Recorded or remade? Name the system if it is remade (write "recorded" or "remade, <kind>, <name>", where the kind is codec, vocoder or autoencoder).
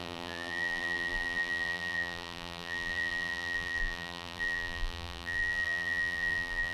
remade, vocoder, BigVGAN v2